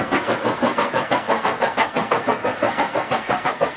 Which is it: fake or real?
fake